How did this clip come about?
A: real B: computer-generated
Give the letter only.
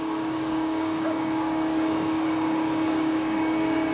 B